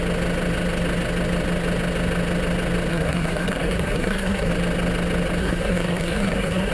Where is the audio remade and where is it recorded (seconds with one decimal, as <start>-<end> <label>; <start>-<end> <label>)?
0.0-2.9 recorded; 2.9-4.5 remade; 4.5-5.4 recorded; 5.4-6.7 remade